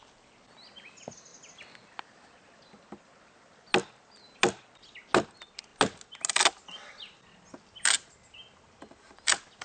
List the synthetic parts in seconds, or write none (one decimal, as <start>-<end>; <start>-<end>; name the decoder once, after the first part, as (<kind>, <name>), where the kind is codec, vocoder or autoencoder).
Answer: none